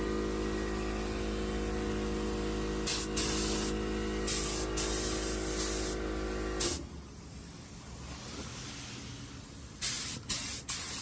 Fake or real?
real